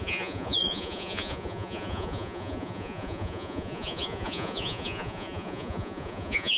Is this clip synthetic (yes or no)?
yes